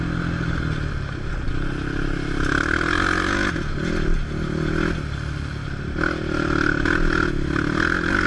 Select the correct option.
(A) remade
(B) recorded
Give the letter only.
B